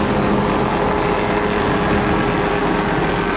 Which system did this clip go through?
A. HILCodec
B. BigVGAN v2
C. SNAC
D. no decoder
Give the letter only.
D